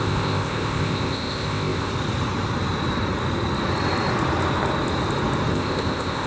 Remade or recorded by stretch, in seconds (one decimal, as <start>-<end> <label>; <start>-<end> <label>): 0.0-1.9 remade; 1.9-5.5 recorded; 5.5-6.3 remade

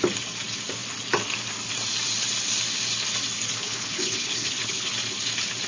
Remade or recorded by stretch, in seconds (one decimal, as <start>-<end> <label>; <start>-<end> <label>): 0.0-3.6 recorded; 3.6-4.9 remade; 4.9-5.7 recorded

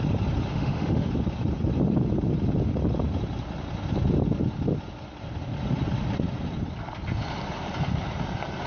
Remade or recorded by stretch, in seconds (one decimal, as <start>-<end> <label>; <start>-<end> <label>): 0.0-0.5 recorded; 0.5-1.1 remade; 1.1-8.7 recorded

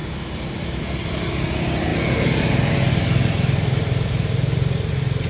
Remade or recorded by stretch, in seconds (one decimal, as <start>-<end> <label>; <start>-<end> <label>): 0.0-5.3 recorded

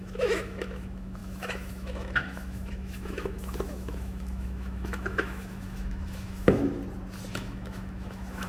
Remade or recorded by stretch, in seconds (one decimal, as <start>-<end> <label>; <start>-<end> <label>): 0.0-6.8 remade; 6.8-7.3 recorded; 7.3-8.5 remade

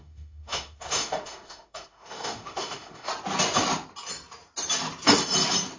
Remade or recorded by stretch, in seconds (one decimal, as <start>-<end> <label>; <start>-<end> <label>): 0.0-3.1 remade; 3.1-5.8 recorded